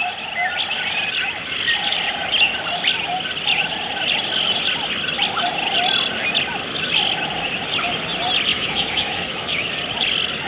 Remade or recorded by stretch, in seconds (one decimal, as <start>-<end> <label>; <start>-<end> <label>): 0.0-8.5 recorded; 8.5-9.7 remade; 9.7-10.5 recorded

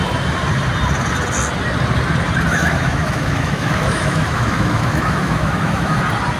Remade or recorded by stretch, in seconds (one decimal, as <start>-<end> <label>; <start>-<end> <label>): 0.0-2.5 recorded; 2.5-6.0 remade; 6.0-6.4 recorded

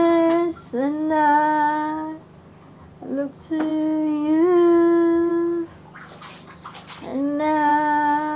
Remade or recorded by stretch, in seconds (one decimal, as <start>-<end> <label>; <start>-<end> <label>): 0.0-8.4 recorded